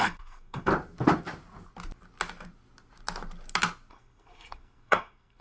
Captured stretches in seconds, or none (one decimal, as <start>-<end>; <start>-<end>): 0.7-3.9